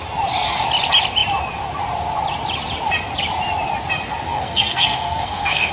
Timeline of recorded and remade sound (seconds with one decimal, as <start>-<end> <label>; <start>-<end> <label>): 0.0-4.3 recorded; 4.3-5.7 remade